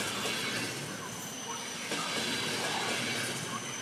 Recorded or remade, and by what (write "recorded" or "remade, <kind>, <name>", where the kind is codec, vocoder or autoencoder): recorded